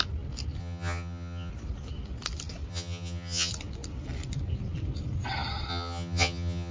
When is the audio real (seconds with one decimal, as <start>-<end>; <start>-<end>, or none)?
0.0-0.6; 1.5-2.7; 3.5-5.7